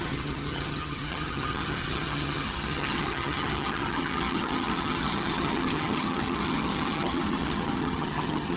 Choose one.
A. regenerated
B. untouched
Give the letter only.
A